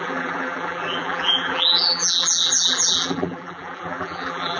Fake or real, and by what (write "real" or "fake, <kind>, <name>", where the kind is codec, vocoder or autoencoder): fake, vocoder, BigVGAN v2